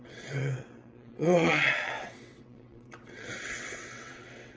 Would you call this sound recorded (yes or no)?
no